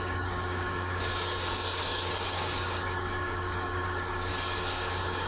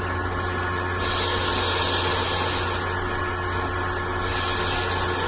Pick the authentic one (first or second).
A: second